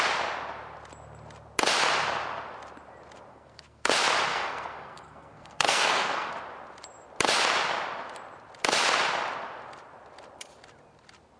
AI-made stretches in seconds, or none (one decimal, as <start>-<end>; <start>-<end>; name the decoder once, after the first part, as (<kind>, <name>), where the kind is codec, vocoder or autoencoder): 3.3-3.9 (codec, SNAC); 4.3-6.3